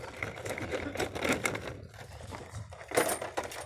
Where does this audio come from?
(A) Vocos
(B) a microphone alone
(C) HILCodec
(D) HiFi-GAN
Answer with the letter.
B